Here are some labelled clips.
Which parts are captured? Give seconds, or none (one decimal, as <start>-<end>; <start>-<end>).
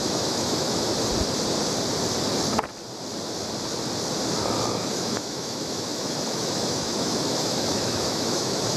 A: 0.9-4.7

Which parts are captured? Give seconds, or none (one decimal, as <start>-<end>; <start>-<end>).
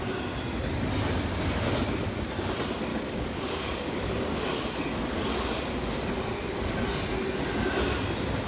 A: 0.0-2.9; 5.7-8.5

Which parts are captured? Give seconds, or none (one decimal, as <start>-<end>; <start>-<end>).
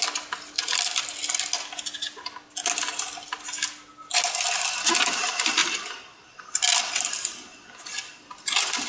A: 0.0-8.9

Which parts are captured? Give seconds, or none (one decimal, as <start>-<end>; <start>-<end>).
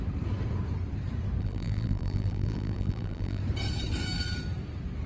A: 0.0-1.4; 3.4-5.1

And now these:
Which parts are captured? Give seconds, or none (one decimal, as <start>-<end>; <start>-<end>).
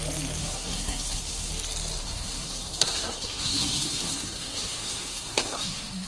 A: 0.0-0.4; 1.5-2.0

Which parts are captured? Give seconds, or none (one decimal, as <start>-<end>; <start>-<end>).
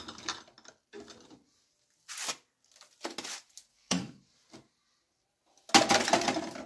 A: 0.0-3.7; 4.2-6.7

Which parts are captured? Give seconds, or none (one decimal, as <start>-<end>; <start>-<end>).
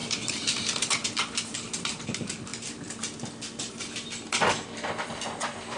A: none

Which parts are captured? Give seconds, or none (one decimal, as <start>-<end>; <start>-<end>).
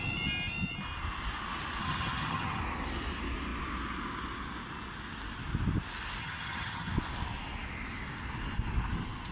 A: 0.0-1.8; 2.6-6.2; 6.9-9.3